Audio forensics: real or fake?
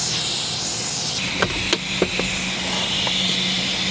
real